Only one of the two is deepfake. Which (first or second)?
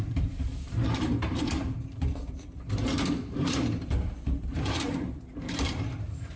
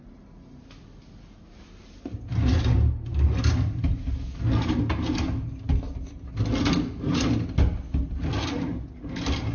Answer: first